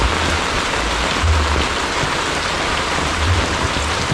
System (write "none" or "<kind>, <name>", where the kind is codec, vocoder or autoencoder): none